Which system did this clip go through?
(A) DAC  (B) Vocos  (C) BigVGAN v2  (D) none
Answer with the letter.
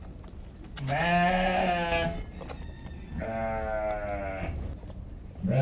D